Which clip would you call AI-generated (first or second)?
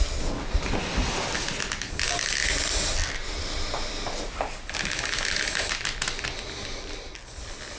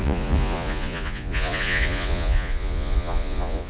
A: second